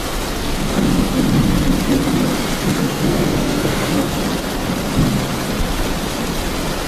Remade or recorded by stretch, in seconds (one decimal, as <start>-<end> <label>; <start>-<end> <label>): 0.0-0.4 recorded; 0.4-1.2 remade; 1.2-2.7 recorded; 2.7-4.2 remade; 4.2-6.9 recorded